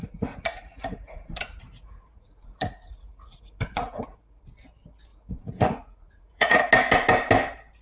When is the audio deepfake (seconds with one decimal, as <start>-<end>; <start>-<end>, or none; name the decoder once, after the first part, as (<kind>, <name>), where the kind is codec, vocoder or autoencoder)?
0.0-4.4 (vocoder, Vocos); 5.1-6.7